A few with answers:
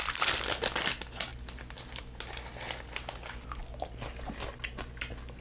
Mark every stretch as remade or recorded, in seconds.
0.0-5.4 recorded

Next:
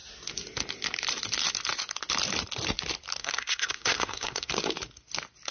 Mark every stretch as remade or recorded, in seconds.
0.0-3.2 recorded; 3.2-4.5 remade; 4.5-5.5 recorded

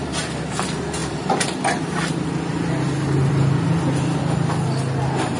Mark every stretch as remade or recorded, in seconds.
0.0-5.4 recorded

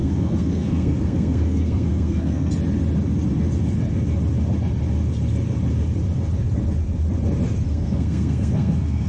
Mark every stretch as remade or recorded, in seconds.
0.0-2.5 remade; 2.5-7.7 recorded; 7.7-9.1 remade

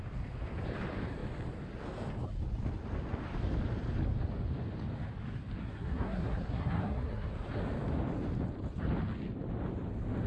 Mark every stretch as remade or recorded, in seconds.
0.0-5.6 recorded; 5.6-7.3 remade; 7.3-10.3 recorded

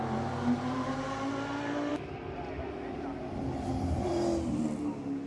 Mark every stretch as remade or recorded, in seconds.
0.0-5.3 recorded